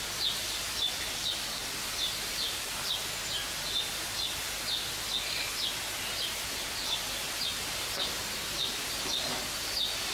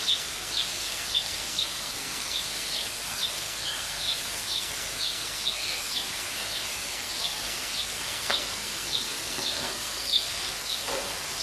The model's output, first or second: second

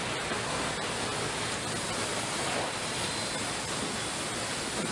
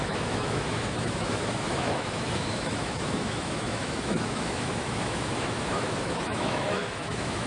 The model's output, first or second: second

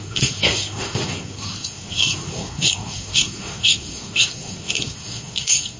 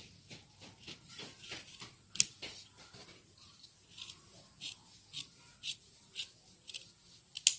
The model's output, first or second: first